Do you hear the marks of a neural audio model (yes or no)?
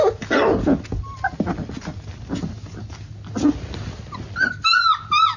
no